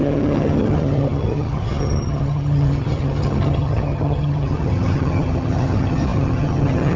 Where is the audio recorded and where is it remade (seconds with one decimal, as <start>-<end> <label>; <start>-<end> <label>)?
0.0-7.0 remade